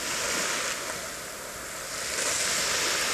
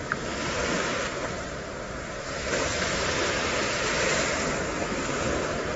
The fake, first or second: second